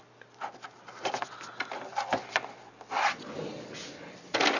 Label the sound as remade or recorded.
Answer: recorded